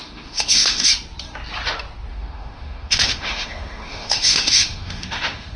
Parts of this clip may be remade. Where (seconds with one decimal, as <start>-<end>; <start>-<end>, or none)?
0.0-0.9; 2.1-5.6